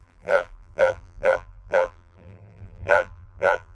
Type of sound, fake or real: fake